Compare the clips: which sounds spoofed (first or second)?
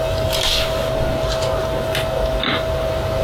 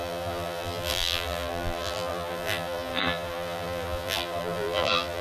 second